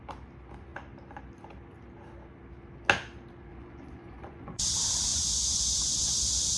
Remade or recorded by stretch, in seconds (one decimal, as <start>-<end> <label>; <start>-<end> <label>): 0.0-3.5 recorded; 3.5-4.6 remade; 4.6-5.1 recorded; 5.1-6.1 remade; 6.1-6.6 recorded